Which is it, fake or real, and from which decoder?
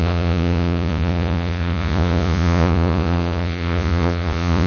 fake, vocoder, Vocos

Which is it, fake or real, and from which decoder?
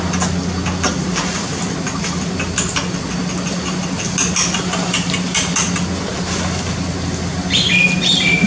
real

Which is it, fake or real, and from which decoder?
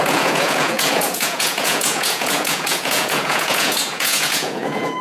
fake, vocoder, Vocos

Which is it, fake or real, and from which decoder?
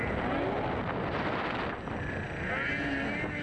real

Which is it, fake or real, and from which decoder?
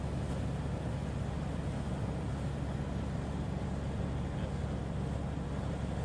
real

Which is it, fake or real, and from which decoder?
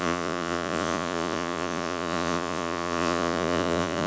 fake, vocoder, Vocos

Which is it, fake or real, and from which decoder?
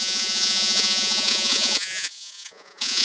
fake, vocoder, Vocos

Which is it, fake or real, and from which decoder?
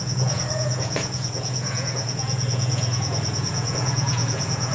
fake, vocoder, Vocos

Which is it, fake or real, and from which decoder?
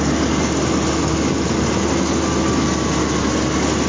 real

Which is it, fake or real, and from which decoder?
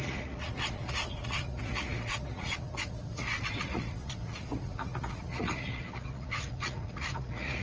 fake, vocoder, Vocos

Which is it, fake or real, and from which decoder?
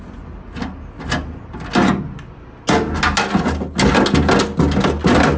real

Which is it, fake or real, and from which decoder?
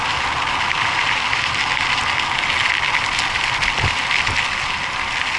real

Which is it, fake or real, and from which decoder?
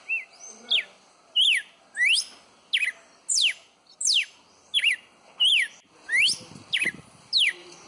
real